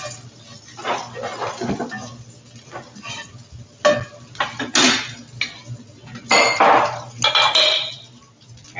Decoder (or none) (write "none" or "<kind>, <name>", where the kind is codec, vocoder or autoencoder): none